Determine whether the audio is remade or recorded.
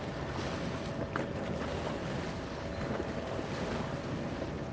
recorded